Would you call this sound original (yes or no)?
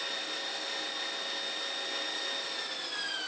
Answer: yes